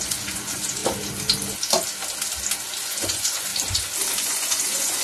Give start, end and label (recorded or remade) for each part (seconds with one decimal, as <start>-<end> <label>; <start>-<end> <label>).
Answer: 0.0-0.8 remade; 0.8-2.8 recorded; 2.8-3.5 remade; 3.5-4.1 recorded; 4.1-5.0 remade